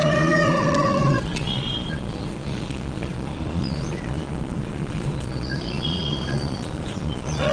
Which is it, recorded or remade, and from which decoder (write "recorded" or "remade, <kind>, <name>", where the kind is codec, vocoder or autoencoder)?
remade, vocoder, Vocos